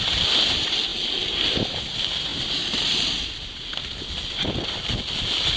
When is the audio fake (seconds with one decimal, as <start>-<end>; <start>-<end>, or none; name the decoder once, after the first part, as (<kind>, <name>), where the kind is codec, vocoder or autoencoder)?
none